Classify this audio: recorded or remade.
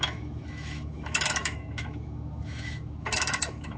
remade